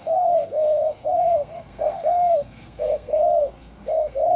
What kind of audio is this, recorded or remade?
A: remade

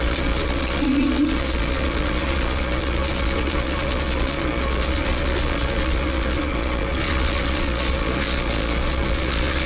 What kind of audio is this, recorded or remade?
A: remade